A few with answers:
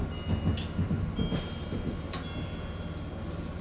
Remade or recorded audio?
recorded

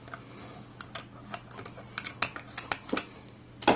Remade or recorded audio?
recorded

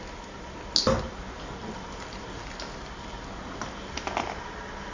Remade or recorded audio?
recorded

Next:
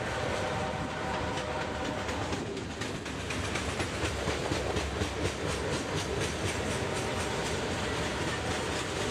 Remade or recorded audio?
recorded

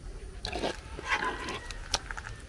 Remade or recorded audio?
recorded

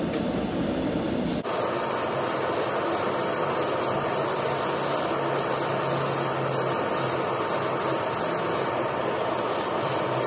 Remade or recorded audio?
recorded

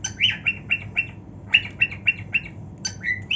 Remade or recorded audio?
recorded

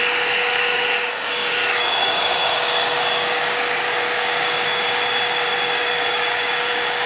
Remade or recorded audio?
remade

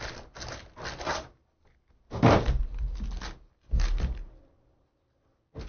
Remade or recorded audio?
recorded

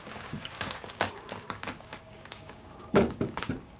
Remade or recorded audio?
remade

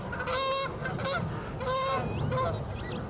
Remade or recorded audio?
recorded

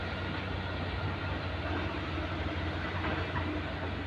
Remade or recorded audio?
recorded